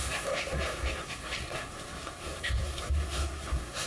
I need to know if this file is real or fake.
fake